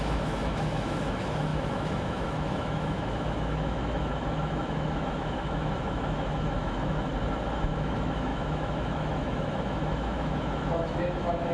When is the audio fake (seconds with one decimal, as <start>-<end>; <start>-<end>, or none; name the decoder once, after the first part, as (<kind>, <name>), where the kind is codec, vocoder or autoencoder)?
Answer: 0.0-7.1 (autoencoder, DAC-VAE); 7.6-11.5